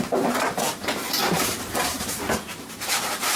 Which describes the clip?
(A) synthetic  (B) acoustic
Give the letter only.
A